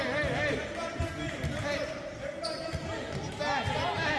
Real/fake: real